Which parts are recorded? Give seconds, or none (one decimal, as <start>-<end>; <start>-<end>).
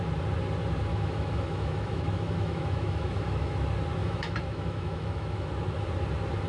0.0-0.9; 3.5-4.0; 5.5-6.5